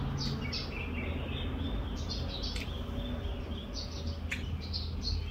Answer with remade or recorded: recorded